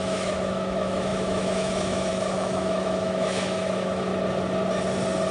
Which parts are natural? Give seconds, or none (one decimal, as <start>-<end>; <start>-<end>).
4.1-5.3